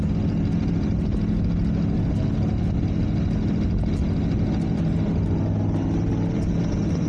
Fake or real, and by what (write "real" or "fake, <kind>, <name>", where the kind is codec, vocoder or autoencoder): real